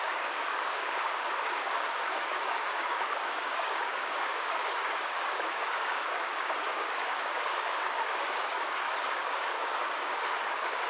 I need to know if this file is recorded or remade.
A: remade